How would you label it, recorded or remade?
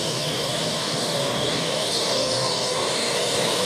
remade